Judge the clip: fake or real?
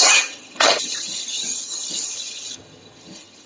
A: fake